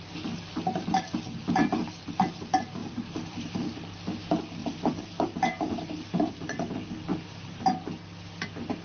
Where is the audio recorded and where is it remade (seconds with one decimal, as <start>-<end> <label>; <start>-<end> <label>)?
0.0-2.8 recorded; 2.8-3.8 remade; 3.8-4.6 recorded; 4.6-6.4 remade; 6.4-7.1 recorded; 7.1-7.6 remade; 7.6-8.8 recorded